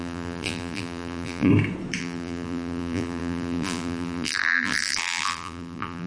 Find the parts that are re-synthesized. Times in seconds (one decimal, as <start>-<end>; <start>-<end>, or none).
0.0-1.5; 2.0-6.1

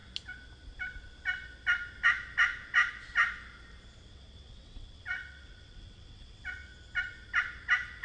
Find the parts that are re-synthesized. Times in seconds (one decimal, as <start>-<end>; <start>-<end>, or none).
4.1-6.7

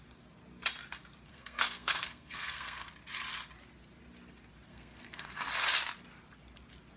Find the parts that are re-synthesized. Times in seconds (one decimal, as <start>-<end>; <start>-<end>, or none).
1.3-2.9; 4.7-5.4